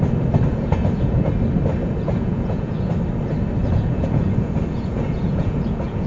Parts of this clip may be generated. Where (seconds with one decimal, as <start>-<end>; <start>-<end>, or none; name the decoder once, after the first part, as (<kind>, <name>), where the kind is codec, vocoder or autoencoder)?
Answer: 0.5-1.3 (vocoder, Vocos); 1.8-2.9; 3.6-6.1